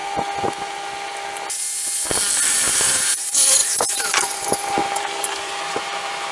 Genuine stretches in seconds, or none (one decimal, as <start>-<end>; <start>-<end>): 0.0-2.5